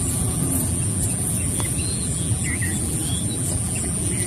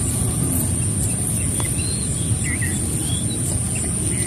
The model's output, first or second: first